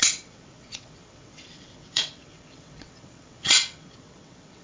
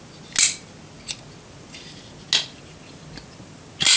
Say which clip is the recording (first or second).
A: second